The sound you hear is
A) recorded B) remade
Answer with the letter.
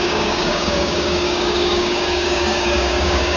B